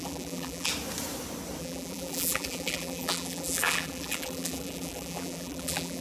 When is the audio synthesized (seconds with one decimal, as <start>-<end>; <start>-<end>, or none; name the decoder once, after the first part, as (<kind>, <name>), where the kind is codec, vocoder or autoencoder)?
0.0-0.7 (vocoder, BigVGAN v2); 1.6-6.0